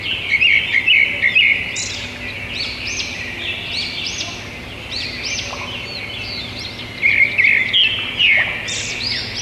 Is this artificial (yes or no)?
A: no